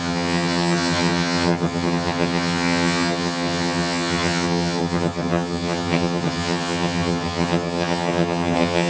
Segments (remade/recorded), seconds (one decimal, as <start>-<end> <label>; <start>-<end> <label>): 0.0-8.9 remade